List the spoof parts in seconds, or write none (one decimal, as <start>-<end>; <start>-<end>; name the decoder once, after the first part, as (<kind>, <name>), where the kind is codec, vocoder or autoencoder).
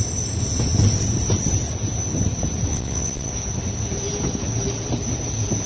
2.7-3.3 (vocoder, WaveNeXt)